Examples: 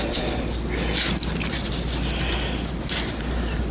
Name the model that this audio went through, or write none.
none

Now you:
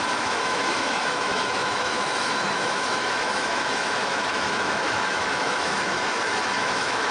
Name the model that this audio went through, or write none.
autoencoder, DAC-VAE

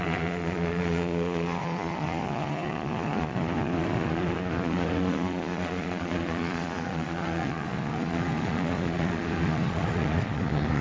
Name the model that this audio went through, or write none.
vocoder, Vocos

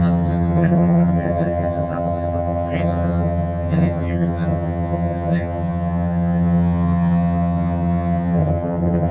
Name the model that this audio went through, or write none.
vocoder, HiFi-GAN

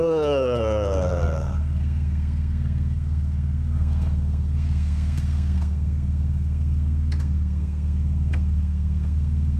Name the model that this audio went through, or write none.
codec, SNAC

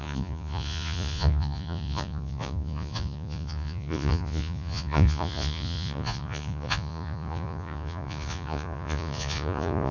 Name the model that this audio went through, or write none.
vocoder, Vocos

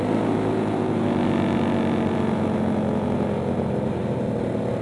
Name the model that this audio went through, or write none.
none